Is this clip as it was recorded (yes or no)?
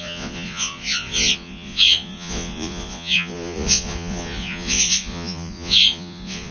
no